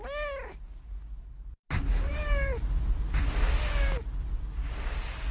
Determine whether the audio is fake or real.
real